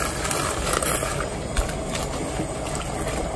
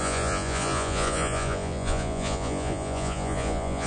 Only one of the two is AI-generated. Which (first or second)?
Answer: second